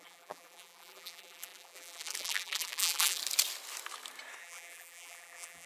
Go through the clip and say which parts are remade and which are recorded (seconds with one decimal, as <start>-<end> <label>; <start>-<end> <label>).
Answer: 0.0-3.2 remade; 3.2-4.4 recorded; 4.4-5.7 remade